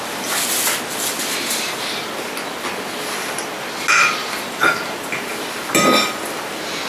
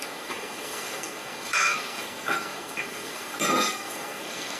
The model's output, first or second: second